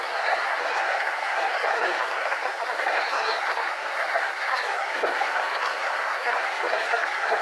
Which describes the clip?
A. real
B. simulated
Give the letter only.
B